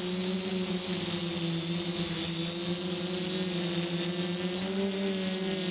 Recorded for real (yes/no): yes